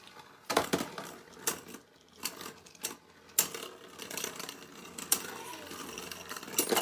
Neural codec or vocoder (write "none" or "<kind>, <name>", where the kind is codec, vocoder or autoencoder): none